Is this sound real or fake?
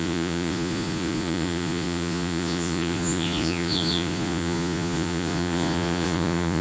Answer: fake